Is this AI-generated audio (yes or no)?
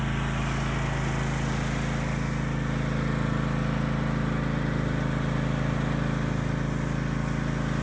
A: no